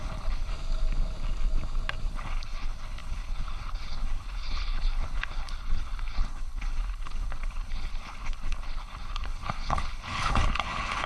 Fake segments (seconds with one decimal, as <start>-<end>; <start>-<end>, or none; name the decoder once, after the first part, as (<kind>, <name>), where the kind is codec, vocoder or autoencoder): 0.0-0.5 (codec, HILCodec); 2.1-11.1